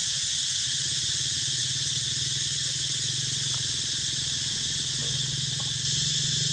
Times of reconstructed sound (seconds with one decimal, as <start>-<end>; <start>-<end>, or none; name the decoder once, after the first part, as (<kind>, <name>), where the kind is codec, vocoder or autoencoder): none